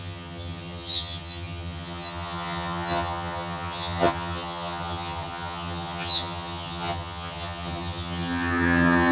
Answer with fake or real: fake